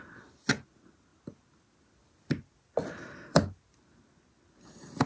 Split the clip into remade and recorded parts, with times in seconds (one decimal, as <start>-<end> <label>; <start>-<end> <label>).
0.0-5.1 recorded